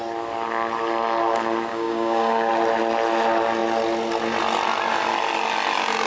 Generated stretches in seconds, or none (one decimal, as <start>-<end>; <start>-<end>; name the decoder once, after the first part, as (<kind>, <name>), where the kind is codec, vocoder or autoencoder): 1.7-2.5 (codec, DAC)